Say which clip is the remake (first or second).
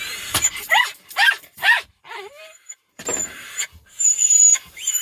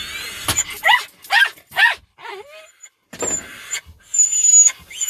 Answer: first